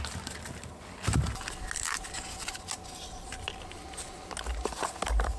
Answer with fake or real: real